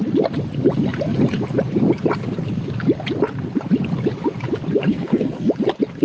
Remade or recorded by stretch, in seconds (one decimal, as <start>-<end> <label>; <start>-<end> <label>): 0.0-4.9 recorded; 4.9-5.5 remade; 5.5-6.0 recorded